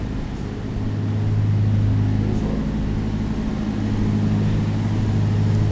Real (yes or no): yes